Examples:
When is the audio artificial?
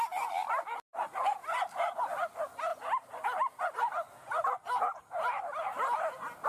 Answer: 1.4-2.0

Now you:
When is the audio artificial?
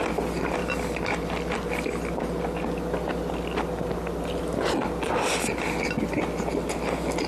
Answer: none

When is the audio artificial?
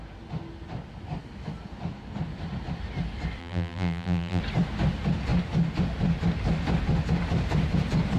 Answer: 3.4-4.4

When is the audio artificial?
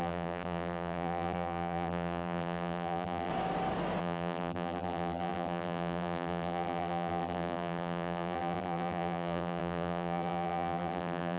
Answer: 0.0-3.3; 4.0-11.4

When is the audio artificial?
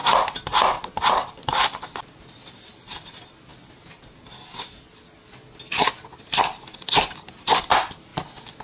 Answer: 1.1-3.5; 6.1-8.1